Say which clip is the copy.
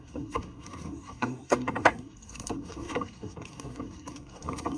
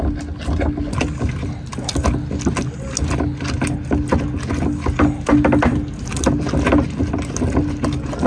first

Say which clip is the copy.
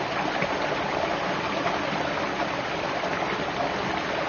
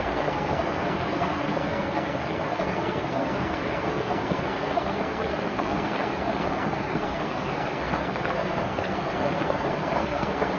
second